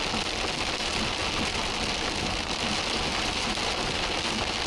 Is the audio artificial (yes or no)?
no